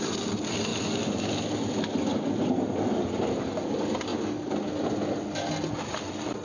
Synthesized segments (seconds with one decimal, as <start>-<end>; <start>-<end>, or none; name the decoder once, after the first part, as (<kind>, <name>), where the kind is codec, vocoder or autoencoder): none